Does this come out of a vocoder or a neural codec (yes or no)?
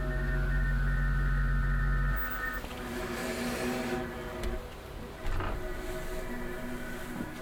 no